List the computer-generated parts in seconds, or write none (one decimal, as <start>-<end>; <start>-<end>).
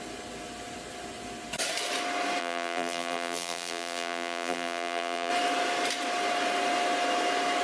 2.4-5.3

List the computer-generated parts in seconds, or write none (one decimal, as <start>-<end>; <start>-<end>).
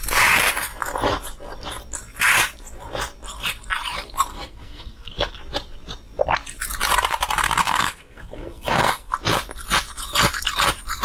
4.3-5.4; 7.6-9.1